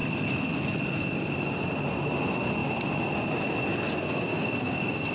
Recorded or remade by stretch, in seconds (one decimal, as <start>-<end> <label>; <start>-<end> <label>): 0.0-4.3 recorded; 4.3-5.1 remade